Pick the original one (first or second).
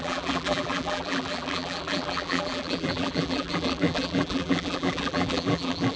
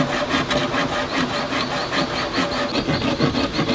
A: second